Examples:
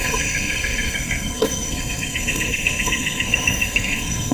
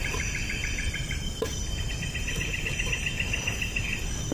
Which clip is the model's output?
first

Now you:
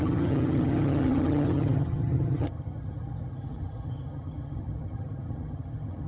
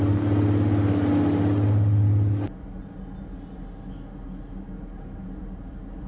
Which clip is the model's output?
first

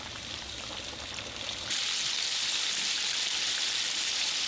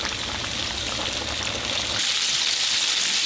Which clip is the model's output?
first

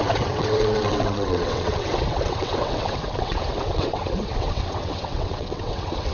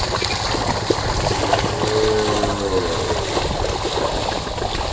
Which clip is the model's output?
first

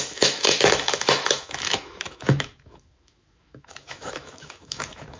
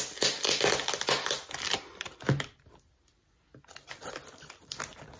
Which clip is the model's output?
first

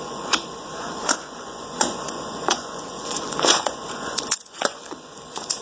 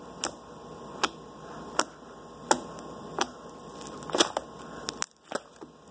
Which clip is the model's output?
first